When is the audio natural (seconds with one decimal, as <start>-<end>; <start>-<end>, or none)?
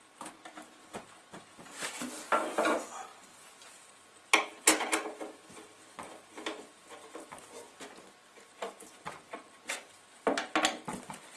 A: 0.0-11.4